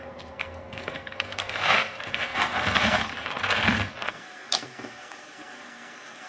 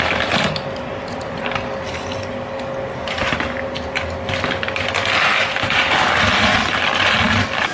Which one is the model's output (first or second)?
first